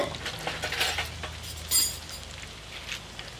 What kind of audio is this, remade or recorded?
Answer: recorded